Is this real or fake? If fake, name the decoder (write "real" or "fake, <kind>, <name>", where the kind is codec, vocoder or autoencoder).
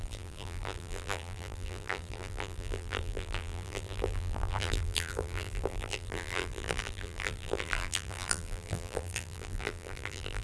fake, vocoder, BigVGAN v2